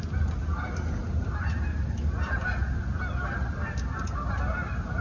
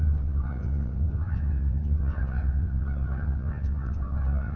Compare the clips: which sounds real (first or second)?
first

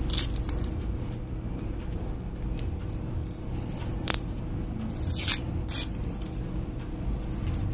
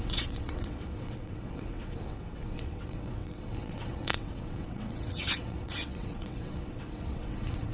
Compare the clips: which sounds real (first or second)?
first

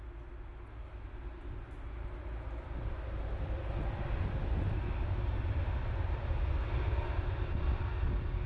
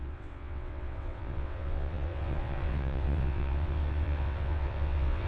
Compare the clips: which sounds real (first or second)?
first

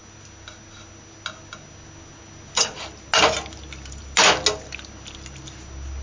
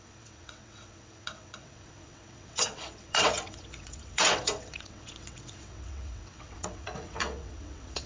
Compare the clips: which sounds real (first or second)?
first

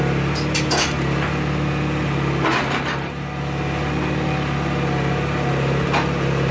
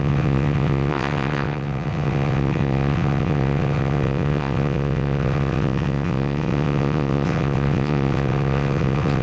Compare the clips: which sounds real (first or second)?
first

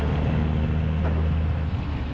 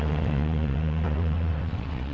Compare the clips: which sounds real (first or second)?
first